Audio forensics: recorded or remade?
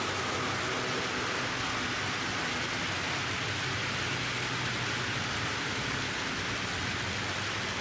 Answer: recorded